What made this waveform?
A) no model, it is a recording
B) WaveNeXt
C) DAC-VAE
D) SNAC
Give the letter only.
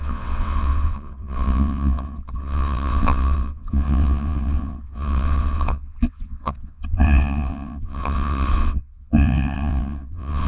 B